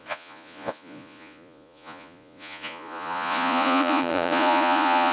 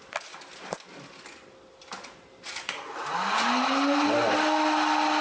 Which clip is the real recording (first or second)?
second